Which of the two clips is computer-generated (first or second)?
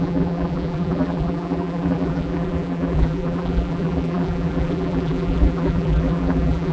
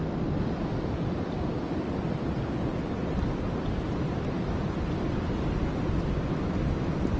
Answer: first